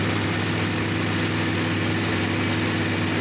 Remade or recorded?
recorded